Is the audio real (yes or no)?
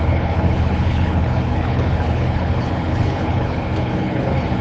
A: no